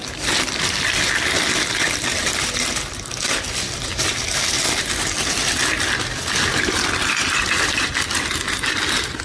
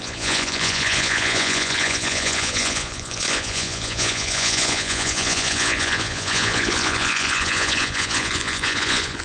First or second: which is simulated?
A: second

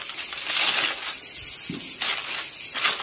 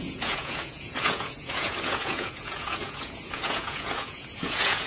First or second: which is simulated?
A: second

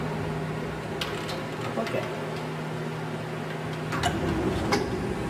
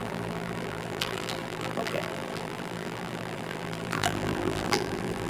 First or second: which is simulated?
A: second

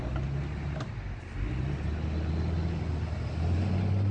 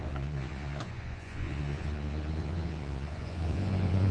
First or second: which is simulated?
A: second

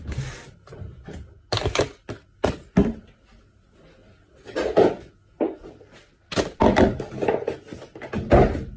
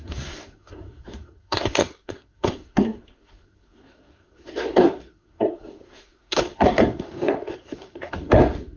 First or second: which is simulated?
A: second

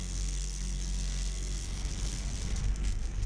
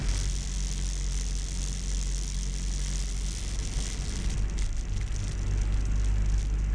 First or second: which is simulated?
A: first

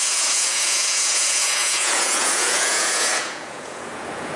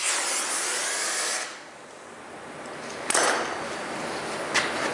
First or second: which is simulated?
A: first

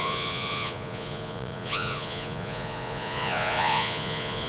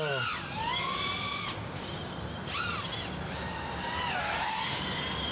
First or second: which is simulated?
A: first